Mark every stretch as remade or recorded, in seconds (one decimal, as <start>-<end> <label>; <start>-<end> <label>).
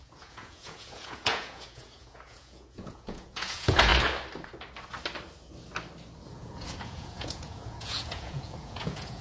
0.0-3.9 remade; 3.9-6.3 recorded; 6.3-9.2 remade